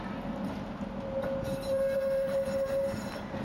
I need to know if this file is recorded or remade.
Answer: recorded